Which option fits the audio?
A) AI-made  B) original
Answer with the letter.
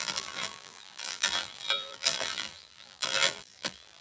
A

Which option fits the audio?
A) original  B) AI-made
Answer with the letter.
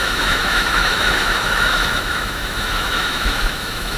B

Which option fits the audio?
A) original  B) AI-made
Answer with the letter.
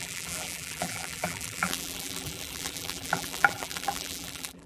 B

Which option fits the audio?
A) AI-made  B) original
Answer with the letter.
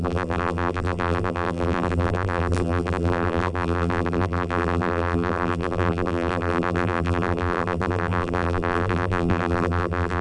A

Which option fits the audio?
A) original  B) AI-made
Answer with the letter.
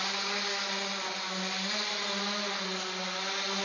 A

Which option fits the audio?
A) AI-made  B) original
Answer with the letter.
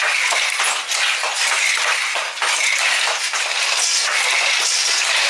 B